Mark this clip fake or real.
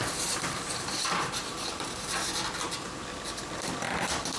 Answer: fake